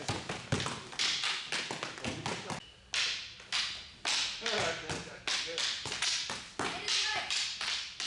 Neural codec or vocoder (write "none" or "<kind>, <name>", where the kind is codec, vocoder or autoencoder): none